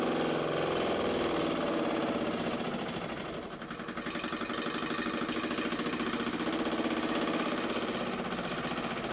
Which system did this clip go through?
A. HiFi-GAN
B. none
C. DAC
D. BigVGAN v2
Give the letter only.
B